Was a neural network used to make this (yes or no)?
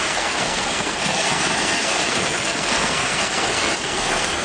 yes